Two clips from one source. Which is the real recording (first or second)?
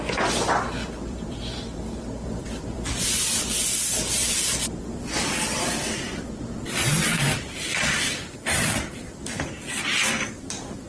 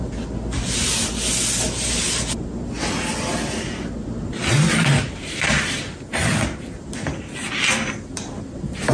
second